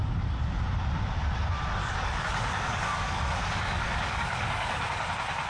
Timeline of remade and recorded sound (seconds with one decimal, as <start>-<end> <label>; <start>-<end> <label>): 0.0-1.8 recorded; 1.8-5.1 remade; 5.1-5.5 recorded